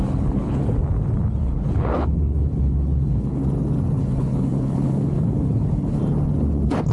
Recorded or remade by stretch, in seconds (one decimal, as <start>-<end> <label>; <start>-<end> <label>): 0.0-0.8 remade; 0.8-1.4 recorded; 1.4-3.4 remade; 3.4-4.0 recorded; 4.0-6.0 remade; 6.0-6.9 recorded